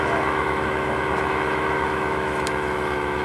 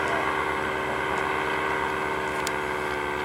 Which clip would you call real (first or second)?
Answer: second